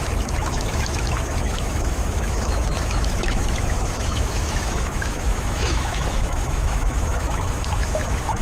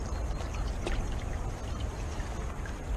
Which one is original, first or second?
second